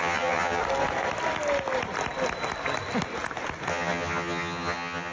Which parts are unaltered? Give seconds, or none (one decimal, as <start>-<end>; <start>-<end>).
0.6-3.7